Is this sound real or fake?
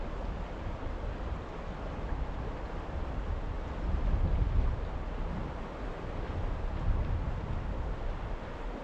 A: real